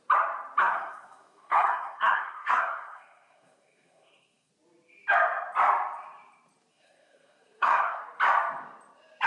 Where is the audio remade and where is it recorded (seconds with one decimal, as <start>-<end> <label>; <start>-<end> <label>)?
0.0-0.6 recorded; 0.6-4.5 remade; 4.5-6.7 recorded; 6.7-8.0 remade; 8.0-9.3 recorded